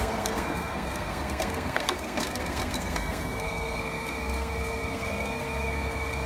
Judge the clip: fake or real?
fake